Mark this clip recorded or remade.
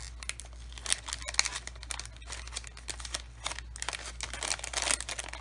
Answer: recorded